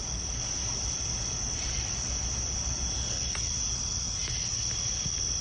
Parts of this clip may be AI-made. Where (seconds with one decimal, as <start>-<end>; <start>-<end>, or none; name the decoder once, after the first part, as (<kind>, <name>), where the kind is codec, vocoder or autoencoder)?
none